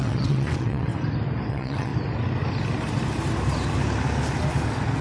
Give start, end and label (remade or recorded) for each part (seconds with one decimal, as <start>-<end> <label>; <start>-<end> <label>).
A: 0.0-0.9 remade; 0.9-1.5 recorded; 1.5-1.9 remade; 1.9-5.0 recorded